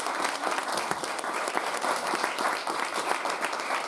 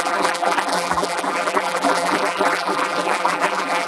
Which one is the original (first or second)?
first